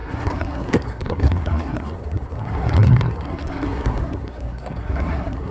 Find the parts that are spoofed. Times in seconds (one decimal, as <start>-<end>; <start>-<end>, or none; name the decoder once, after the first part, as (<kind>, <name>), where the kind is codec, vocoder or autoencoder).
0.0-5.5 (codec, SNAC)